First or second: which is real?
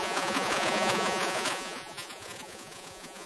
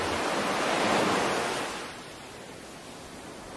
second